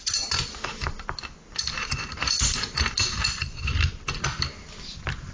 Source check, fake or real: real